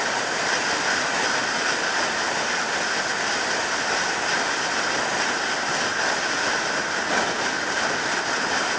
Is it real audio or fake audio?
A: real